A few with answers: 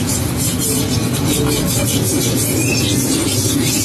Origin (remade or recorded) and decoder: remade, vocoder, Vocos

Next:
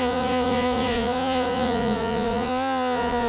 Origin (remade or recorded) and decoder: remade, vocoder, Vocos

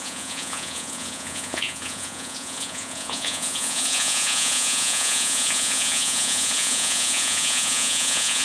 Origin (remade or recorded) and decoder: remade, vocoder, Vocos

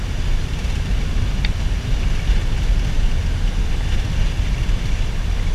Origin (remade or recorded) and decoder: recorded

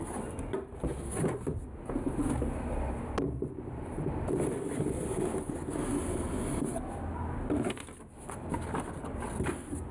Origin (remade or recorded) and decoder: recorded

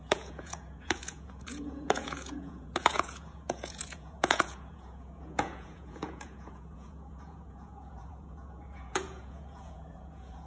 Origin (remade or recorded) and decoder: remade, vocoder, Vocos